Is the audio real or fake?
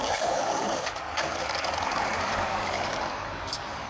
fake